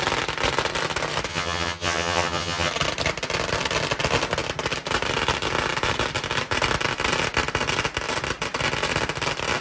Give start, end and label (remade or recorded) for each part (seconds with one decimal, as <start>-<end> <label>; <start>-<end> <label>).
0.0-1.3 recorded; 1.3-2.7 remade; 2.7-9.6 recorded